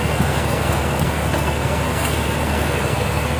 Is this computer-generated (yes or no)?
yes